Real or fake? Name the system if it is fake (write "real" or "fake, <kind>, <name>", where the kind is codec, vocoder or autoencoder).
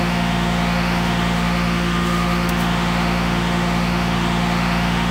fake, autoencoder, DAC-VAE